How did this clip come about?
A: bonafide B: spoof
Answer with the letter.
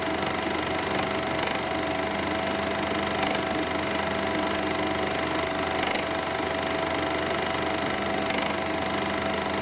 A